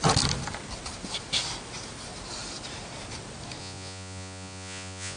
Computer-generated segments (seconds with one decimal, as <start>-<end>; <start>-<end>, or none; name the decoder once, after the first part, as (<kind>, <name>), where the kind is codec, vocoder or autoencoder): 3.6-5.2 (vocoder, Vocos)